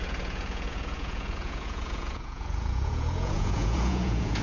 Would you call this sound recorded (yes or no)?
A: no